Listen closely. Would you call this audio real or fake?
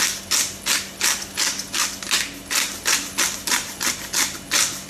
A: real